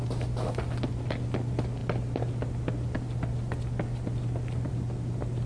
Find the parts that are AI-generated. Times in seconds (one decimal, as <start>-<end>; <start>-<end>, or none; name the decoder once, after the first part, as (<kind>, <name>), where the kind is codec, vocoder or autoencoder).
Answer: none